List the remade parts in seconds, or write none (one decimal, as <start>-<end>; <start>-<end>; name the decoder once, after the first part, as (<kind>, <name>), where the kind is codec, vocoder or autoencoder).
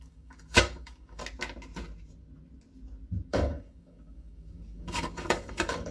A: 0.0-1.2 (codec, DAC); 3.3-5.9